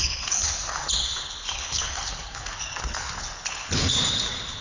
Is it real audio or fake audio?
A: fake